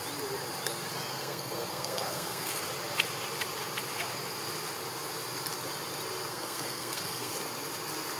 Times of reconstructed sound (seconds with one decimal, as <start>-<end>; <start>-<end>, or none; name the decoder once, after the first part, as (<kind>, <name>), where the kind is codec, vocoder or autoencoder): 1.1-2.6 (codec, SNAC); 6.3-7.3